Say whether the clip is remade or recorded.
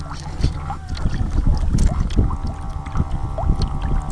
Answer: recorded